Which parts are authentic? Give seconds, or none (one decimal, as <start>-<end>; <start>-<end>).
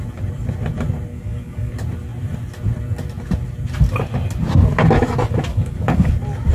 0.0-1.1; 1.7-5.5; 6.1-6.5